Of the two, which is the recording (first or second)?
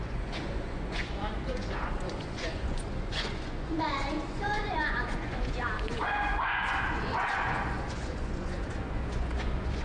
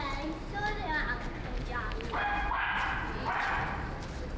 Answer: second